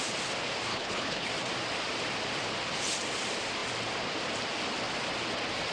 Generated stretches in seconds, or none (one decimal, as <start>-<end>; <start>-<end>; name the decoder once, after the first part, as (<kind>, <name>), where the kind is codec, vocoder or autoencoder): 0.7-1.3 (codec, HILCodec)